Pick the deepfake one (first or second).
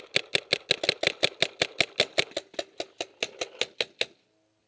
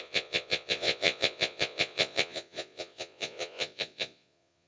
second